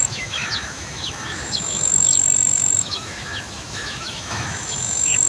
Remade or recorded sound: remade